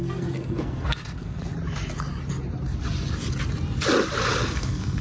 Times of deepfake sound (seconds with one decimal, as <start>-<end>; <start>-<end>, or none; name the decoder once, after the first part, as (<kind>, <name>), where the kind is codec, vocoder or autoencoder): 0.0-1.4 (codec, SNAC); 4.4-5.0